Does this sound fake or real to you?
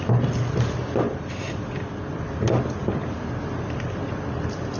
real